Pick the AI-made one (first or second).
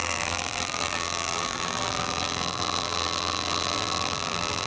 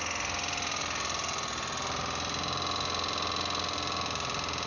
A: first